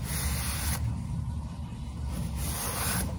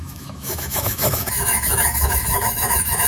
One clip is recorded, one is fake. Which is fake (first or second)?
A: second